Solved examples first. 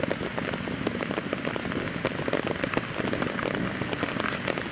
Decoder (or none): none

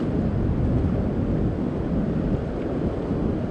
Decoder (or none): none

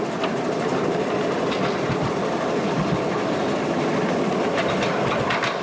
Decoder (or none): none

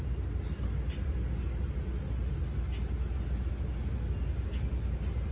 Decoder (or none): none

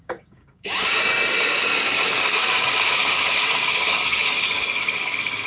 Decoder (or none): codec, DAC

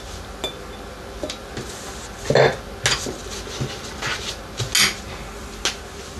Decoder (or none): none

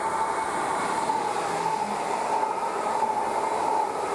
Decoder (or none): none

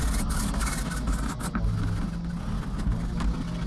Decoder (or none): none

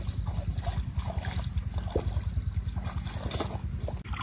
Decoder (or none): none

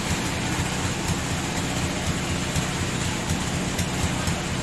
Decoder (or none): none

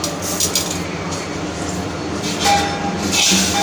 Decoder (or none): none